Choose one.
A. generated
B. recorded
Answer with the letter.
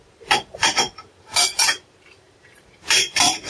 A